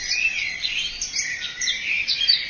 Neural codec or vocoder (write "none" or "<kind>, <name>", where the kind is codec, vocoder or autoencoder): none